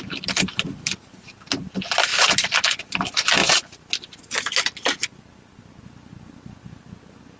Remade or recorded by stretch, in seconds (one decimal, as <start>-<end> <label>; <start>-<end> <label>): 0.0-7.4 recorded